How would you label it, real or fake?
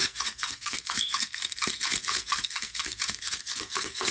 fake